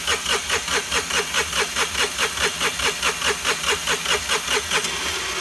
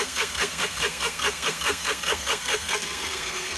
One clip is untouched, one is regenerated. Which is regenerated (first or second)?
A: second